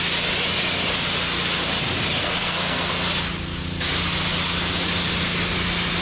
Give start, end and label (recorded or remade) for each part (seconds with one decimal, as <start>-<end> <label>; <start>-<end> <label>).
0.0-2.2 recorded; 2.2-2.9 remade; 2.9-6.0 recorded